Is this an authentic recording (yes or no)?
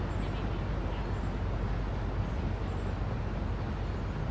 yes